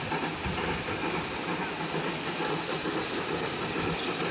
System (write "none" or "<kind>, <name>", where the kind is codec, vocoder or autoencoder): vocoder, BigVGAN v2